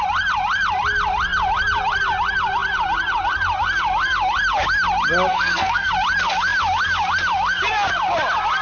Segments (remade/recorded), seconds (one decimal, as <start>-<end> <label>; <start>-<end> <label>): 0.0-5.3 recorded; 5.3-5.9 remade; 5.9-8.6 recorded